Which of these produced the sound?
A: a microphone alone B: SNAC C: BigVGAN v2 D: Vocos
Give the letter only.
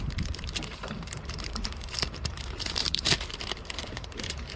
C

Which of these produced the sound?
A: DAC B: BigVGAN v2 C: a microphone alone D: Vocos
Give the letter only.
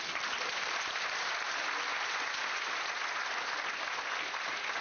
B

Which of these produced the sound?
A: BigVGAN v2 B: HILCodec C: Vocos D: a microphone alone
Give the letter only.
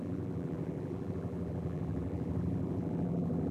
A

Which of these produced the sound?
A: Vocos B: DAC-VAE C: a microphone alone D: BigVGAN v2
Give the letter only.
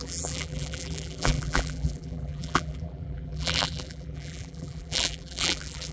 D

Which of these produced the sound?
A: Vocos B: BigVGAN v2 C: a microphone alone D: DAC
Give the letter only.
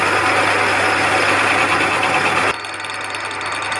C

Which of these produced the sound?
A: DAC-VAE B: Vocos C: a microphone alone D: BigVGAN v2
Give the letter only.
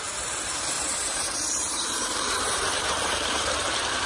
D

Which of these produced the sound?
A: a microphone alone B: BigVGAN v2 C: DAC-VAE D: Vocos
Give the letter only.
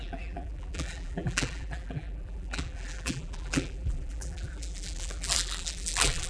B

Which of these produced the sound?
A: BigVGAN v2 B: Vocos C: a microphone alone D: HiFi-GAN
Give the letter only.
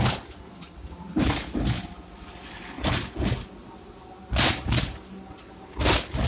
C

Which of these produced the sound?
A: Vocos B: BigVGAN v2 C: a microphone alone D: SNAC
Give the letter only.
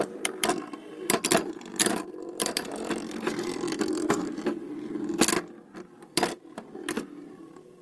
B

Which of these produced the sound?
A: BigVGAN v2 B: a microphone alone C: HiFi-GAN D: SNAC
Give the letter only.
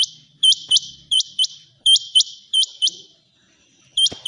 A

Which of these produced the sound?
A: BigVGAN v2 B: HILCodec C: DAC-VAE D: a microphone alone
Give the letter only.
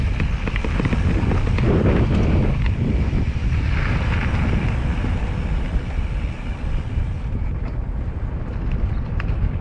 D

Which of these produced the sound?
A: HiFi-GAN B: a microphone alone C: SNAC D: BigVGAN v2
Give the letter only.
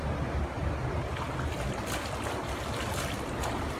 B